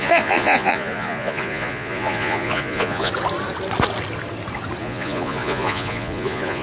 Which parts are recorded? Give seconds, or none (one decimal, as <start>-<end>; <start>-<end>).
3.1-4.8